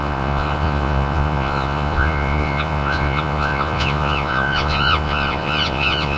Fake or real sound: fake